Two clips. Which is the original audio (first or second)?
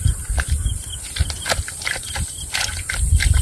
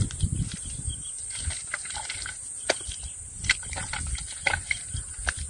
second